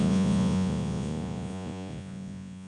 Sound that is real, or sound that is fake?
fake